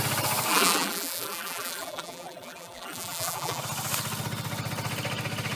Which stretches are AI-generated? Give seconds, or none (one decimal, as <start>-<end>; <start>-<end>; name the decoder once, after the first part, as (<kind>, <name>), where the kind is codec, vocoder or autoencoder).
0.5-3.6 (vocoder, BigVGAN v2)